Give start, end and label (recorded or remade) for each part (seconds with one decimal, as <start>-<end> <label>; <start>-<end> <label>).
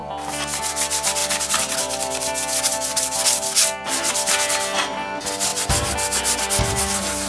0.0-7.3 recorded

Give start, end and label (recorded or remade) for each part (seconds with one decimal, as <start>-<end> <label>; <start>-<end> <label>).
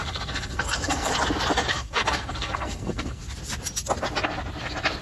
0.0-1.1 remade; 1.1-1.7 recorded; 1.7-3.2 remade; 3.2-5.0 recorded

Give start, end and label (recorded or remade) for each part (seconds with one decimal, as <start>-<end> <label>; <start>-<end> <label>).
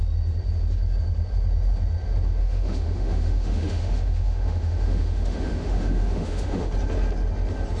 0.0-2.4 recorded; 2.4-6.7 remade; 6.7-7.8 recorded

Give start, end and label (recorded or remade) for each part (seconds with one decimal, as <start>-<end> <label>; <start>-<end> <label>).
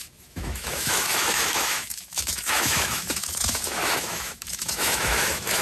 0.0-5.6 remade